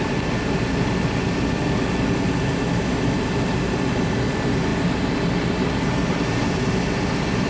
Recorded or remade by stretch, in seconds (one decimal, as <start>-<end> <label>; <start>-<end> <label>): 0.0-7.5 recorded